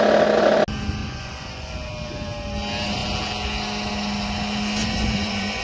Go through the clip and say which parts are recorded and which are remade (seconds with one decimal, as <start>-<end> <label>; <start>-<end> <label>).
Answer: 0.0-1.0 recorded; 1.0-1.7 remade; 1.7-4.8 recorded; 4.8-5.6 remade